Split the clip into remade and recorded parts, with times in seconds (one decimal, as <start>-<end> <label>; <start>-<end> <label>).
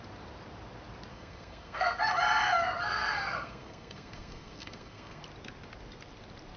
0.0-1.1 recorded; 1.1-2.0 remade; 2.0-2.8 recorded; 2.8-5.2 remade; 5.2-6.6 recorded